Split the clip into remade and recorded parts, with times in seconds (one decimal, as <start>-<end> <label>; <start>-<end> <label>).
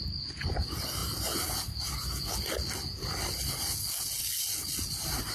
0.0-5.3 recorded